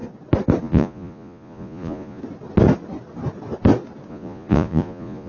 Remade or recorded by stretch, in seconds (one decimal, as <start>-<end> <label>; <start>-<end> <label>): 0.0-0.6 recorded; 0.6-2.2 remade; 2.2-4.1 recorded; 4.1-5.3 remade